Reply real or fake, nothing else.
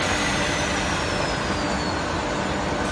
real